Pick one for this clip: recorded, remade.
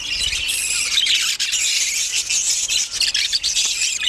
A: recorded